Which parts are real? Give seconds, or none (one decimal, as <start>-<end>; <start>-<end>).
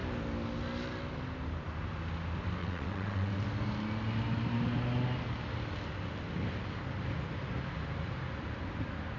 0.0-2.6; 3.3-9.2